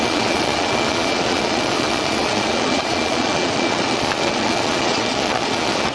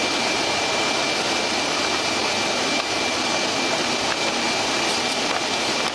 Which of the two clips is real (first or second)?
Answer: second